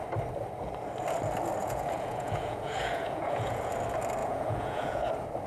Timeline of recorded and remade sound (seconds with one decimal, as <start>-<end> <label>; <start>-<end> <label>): 0.0-1.6 recorded; 1.6-3.7 remade; 3.7-4.2 recorded; 4.2-5.1 remade; 5.1-5.5 recorded